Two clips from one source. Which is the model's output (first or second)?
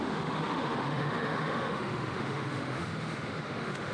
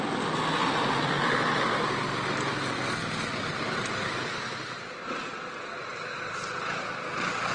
first